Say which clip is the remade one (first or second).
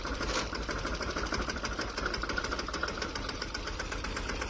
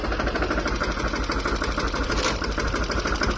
first